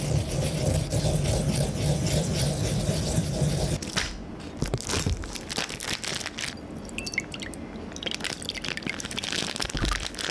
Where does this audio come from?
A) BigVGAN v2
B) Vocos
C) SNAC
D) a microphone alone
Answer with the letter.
D